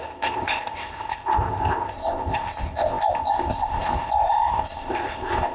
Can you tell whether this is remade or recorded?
remade